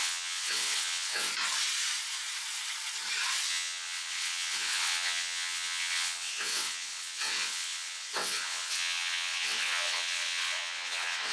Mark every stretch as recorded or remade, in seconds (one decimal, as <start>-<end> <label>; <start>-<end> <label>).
0.0-1.3 remade; 1.3-3.5 recorded; 3.5-11.3 remade